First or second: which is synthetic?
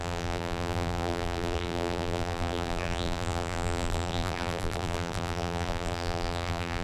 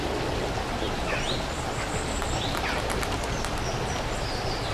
first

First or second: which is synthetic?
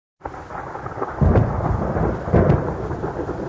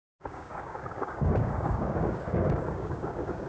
second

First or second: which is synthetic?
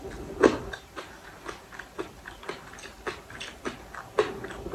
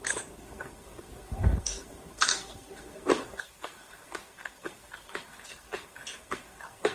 second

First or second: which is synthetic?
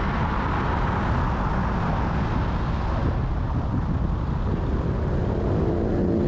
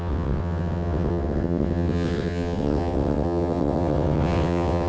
second